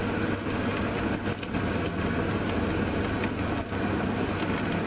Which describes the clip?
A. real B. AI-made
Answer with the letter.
A